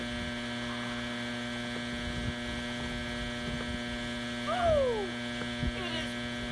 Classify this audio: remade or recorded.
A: recorded